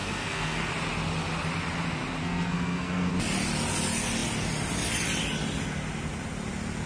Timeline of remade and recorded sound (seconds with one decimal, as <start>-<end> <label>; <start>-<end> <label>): 0.0-0.7 remade; 0.7-2.2 recorded; 2.2-3.1 remade; 3.1-6.9 recorded